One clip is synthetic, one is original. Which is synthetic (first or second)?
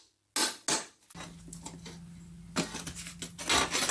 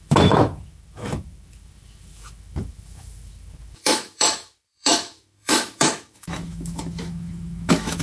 second